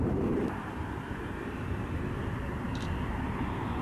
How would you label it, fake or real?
fake